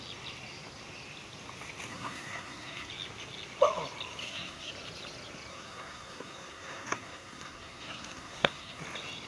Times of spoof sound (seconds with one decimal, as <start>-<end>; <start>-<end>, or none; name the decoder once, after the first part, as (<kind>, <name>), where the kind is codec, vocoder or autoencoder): 1.9-2.9 (codec, SNAC); 4.2-4.7; 5.5-8.8